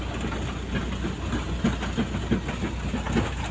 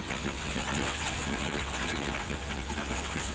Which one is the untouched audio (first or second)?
first